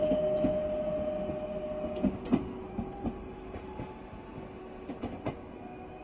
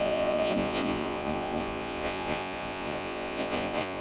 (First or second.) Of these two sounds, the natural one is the first